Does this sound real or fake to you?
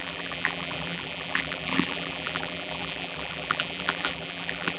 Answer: fake